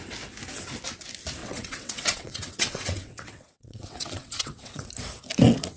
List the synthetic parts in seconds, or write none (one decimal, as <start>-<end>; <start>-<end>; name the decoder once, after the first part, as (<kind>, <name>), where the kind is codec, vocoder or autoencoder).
1.4-4.9 (vocoder, WaveNeXt)